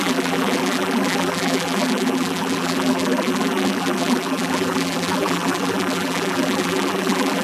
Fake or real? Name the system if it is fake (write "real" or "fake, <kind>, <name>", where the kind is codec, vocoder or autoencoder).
fake, vocoder, BigVGAN v2